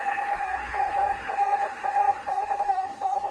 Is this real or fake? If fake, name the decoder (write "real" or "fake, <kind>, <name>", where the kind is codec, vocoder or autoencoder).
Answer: fake, codec, SNAC